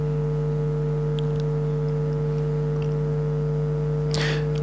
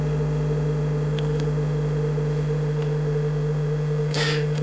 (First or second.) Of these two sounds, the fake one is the second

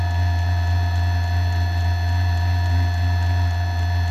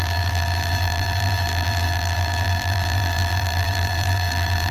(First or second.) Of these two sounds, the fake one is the second